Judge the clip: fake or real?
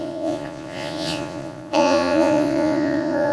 fake